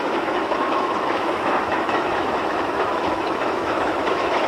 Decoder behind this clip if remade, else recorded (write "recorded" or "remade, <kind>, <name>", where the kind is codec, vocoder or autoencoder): remade, autoencoder, DAC-VAE